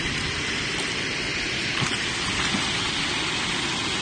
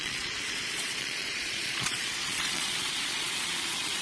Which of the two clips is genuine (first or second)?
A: first